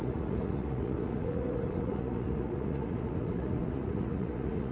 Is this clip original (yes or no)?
no